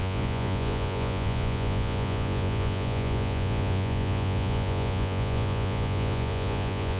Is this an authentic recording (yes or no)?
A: no